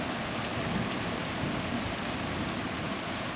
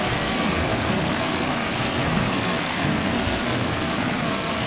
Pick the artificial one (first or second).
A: second